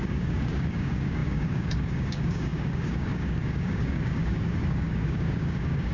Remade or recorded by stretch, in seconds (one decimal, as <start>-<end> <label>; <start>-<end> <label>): 0.0-5.9 remade